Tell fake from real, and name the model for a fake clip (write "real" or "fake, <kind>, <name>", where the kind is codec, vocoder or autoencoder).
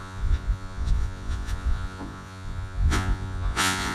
fake, vocoder, Vocos